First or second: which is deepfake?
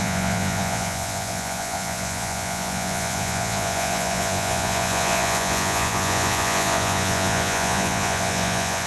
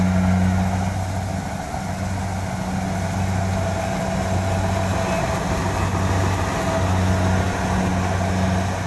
first